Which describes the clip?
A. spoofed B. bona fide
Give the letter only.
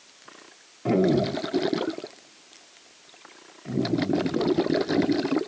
B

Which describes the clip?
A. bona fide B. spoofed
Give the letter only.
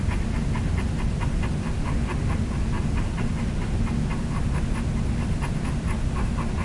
A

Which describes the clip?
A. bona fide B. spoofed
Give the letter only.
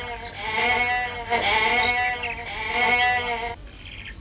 A